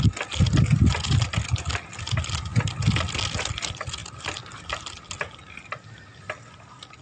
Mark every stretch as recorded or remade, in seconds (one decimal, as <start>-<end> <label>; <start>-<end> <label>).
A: 0.0-7.0 recorded